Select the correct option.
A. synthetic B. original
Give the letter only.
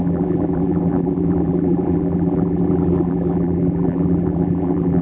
A